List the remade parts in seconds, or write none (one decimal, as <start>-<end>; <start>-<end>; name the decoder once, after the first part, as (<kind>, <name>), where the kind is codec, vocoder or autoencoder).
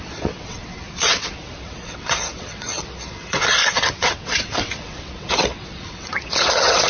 0.0-6.9 (vocoder, WaveNeXt)